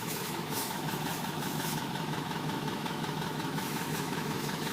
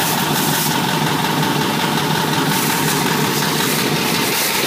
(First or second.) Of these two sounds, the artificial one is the first